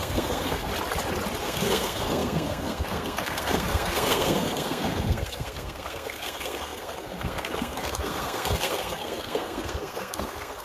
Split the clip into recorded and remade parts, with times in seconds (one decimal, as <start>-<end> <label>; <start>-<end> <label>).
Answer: 0.0-0.7 remade; 0.7-1.4 recorded; 1.4-10.6 remade